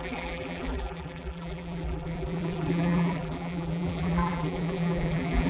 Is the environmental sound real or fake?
fake